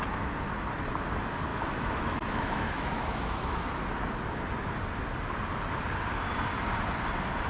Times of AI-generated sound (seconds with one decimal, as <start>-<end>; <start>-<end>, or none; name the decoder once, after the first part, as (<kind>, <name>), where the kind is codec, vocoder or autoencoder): 1.5-3.7 (autoencoder, DAC-VAE)